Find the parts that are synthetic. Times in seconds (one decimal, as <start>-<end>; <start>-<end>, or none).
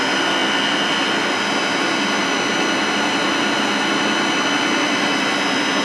none